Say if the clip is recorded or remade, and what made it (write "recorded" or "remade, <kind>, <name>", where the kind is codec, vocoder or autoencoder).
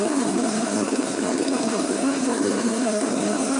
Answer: remade, codec, SNAC